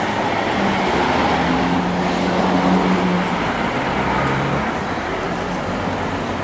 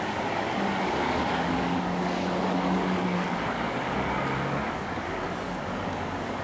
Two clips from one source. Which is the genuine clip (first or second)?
first